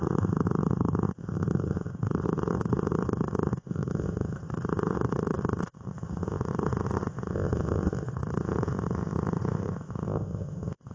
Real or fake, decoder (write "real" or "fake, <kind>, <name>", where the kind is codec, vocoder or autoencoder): fake, codec, ZipCodec